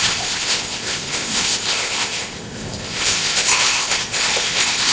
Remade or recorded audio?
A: remade